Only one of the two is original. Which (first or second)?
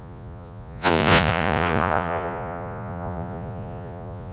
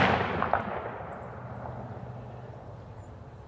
second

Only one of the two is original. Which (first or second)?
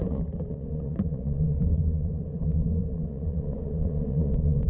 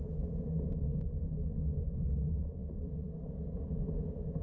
second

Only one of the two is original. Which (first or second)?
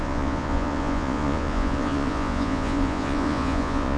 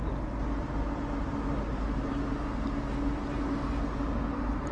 second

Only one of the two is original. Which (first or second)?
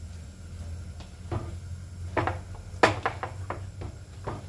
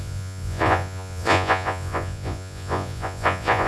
first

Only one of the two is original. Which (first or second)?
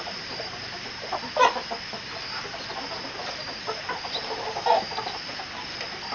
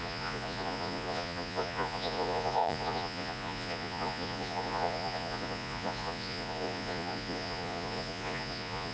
first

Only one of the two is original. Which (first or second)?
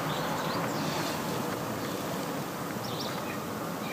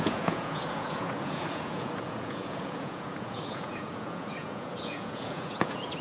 first